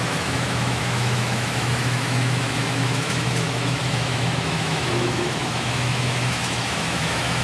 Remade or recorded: remade